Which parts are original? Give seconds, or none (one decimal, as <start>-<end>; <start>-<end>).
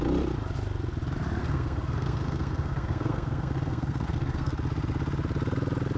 0.0-1.4; 4.5-6.0